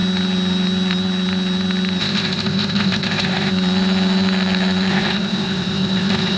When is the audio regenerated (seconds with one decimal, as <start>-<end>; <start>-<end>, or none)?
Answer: 2.0-3.5; 4.9-6.4